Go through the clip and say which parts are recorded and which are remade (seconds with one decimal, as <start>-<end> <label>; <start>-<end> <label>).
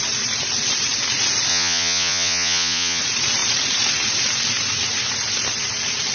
0.0-1.5 recorded; 1.5-3.0 remade; 3.0-6.1 recorded